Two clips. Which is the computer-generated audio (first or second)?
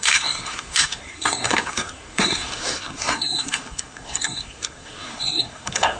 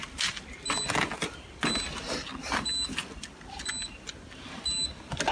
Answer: first